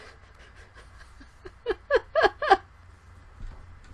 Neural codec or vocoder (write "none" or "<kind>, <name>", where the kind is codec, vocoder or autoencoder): none